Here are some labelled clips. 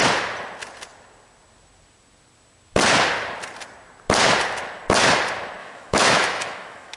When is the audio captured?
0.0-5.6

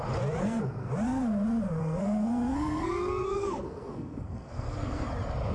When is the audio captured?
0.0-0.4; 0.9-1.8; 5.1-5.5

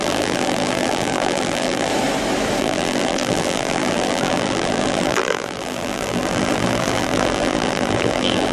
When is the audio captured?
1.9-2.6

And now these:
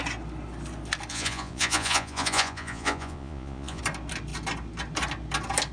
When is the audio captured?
0.0-1.1; 3.8-5.7

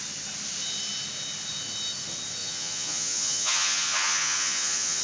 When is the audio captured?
0.0-2.4

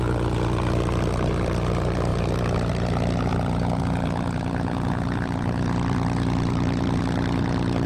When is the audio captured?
0.0-2.1; 2.7-3.3; 7.0-7.9

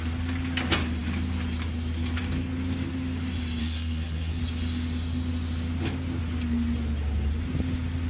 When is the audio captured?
0.0-3.6; 4.4-8.1